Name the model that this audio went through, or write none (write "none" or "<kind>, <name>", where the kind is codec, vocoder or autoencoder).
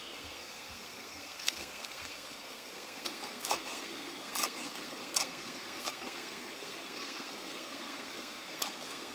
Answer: codec, SNAC